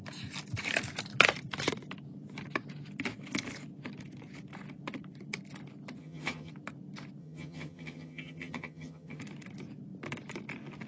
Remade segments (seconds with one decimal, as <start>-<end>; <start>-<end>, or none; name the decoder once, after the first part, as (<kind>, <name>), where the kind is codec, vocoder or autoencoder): 6.0-6.5 (vocoder, HiFi-GAN); 7.2-9.2